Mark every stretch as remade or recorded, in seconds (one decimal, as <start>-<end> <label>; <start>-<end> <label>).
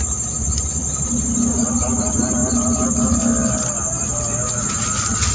0.0-5.3 recorded